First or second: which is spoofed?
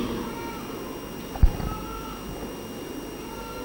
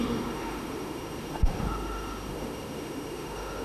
second